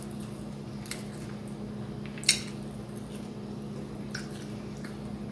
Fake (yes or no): no